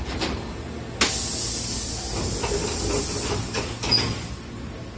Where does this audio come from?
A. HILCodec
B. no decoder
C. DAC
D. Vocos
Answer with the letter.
B